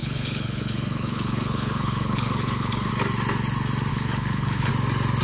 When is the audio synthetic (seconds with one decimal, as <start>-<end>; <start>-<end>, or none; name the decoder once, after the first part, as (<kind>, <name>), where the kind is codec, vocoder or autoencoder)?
0.0-2.9 (codec, HILCodec); 3.9-4.7